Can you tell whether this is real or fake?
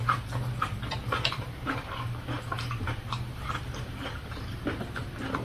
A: fake